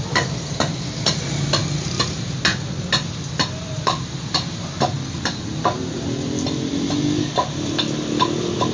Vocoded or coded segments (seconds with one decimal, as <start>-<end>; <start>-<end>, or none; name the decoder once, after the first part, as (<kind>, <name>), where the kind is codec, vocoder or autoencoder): none

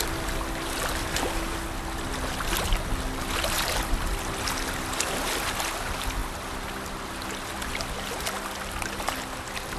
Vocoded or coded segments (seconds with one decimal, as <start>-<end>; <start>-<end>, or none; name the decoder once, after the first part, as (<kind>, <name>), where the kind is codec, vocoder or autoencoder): none

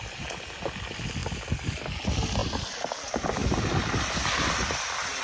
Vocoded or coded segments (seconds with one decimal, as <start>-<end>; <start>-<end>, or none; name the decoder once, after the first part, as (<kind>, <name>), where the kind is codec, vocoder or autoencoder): none

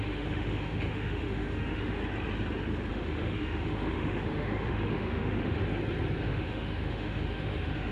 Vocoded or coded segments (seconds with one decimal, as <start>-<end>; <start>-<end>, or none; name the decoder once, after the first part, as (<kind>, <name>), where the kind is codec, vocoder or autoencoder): 0.0-2.0 (autoencoder, DAC-VAE); 2.9-5.6; 6.2-7.9

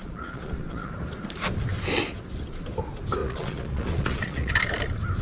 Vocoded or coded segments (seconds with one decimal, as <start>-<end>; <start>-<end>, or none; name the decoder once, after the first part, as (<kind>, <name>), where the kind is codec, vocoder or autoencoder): 0.0-0.9 (vocoder, Vocos); 3.2-4.5